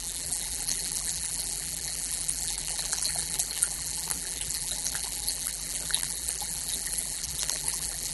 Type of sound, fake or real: fake